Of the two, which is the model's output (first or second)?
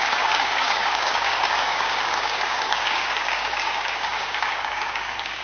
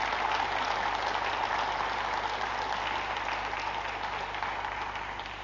first